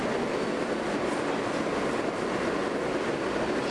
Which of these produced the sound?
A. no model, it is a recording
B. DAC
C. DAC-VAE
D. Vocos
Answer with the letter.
A